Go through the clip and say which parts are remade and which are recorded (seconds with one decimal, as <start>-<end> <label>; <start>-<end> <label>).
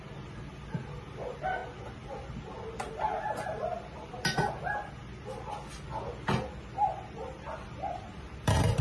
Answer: 0.0-8.8 recorded